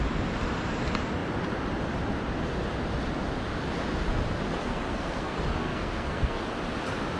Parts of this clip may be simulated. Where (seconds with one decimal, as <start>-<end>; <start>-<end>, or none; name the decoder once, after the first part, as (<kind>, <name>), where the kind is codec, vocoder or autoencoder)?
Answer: 4.6-6.4 (codec, SNAC)